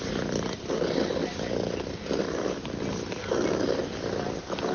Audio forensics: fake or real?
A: real